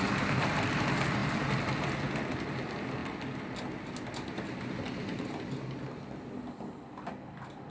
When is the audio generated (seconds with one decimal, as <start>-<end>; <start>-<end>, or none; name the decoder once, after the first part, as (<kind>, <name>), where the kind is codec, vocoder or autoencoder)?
none

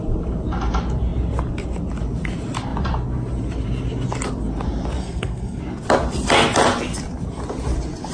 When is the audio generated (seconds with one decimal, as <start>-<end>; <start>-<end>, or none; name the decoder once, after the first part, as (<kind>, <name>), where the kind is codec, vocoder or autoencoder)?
5.0-5.6 (codec, SNAC)